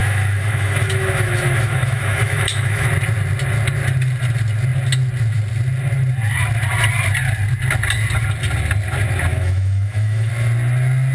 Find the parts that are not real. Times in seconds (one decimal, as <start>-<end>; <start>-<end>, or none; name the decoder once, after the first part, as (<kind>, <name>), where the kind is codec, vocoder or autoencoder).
0.0-2.9 (autoencoder, DAC-VAE); 9.3-10.3